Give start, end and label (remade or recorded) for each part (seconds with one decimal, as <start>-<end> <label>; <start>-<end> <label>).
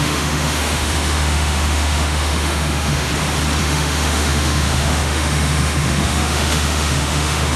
0.0-3.1 remade; 3.1-3.6 recorded; 3.6-7.6 remade